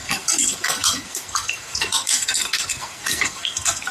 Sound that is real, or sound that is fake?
fake